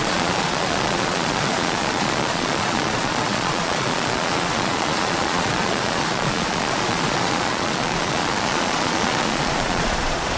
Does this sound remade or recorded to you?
remade